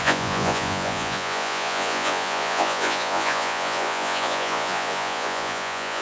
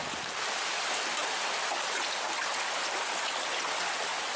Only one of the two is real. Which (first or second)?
second